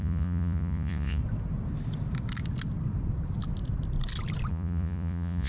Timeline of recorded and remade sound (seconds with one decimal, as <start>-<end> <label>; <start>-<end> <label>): 0.0-1.2 remade; 1.2-4.5 recorded; 4.5-5.5 remade